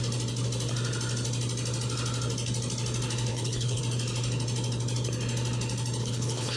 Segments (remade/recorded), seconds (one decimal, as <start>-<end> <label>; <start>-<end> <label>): 0.0-3.3 recorded; 3.3-3.8 remade; 3.8-6.0 recorded; 6.0-6.6 remade